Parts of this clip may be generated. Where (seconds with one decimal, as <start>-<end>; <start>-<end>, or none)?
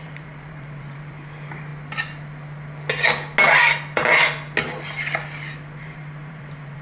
0.0-1.7; 5.8-6.8